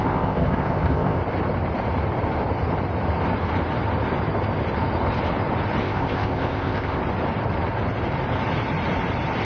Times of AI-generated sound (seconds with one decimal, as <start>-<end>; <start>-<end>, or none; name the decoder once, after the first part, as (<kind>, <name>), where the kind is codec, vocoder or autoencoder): 0.0-1.2 (codec, ZipCodec); 5.8-7.0